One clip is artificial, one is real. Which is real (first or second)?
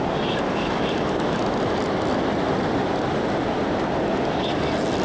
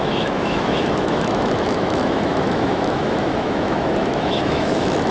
first